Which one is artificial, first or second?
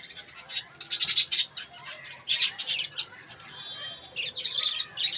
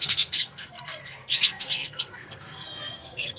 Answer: second